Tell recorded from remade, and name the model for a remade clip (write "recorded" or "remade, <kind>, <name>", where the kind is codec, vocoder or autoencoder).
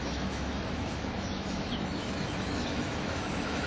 remade, autoencoder, DAC-VAE